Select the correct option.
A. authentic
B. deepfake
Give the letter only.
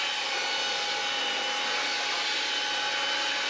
A